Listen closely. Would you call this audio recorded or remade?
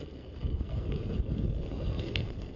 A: remade